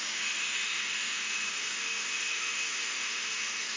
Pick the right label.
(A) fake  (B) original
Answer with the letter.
A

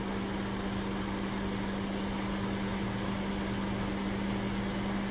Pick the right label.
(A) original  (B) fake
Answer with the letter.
A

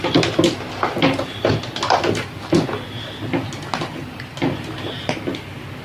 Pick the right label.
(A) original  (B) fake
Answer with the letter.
A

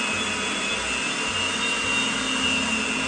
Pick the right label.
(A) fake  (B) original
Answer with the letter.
B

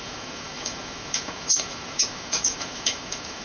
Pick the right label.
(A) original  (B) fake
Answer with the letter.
B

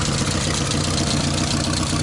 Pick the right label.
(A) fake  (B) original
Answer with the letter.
B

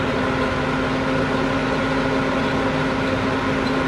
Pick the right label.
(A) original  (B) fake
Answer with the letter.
A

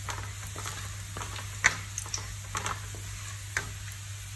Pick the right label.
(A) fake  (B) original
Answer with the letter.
B